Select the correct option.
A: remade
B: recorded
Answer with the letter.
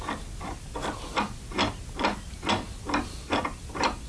B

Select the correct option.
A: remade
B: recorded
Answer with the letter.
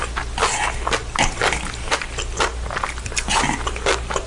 B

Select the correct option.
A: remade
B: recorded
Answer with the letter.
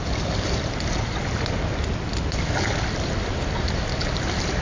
B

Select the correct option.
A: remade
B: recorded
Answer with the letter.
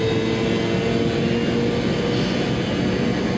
B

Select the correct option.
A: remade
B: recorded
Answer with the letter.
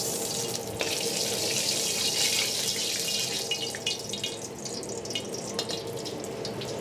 B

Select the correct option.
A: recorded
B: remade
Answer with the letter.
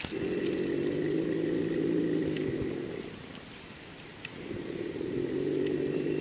A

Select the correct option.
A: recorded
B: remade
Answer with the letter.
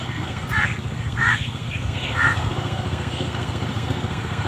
B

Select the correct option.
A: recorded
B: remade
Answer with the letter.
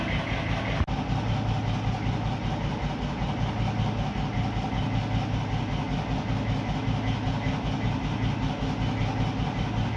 A